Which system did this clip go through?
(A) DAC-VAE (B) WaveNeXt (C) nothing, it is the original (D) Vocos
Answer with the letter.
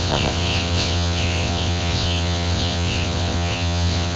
B